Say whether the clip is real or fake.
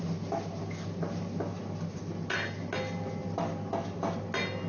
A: real